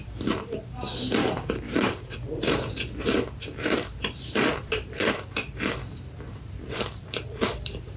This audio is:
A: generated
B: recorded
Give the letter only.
A